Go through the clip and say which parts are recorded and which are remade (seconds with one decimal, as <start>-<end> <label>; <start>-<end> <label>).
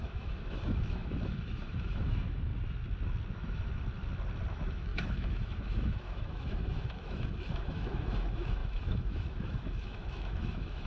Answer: 0.0-2.5 remade; 2.5-3.3 recorded; 3.3-3.8 remade; 3.8-4.5 recorded; 4.5-10.9 remade